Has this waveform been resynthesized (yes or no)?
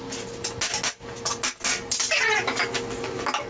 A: no